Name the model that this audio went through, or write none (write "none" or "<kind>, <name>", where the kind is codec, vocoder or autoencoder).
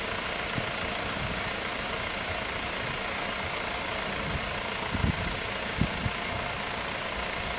none